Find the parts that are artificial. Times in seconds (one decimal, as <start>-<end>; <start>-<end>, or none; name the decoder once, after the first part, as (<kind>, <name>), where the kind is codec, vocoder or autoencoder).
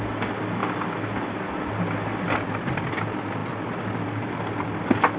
none